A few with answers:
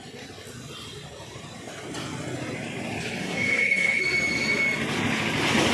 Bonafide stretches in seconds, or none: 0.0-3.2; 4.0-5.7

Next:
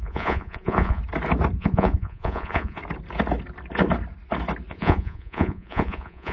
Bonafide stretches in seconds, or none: 1.0-1.6; 2.8-4.7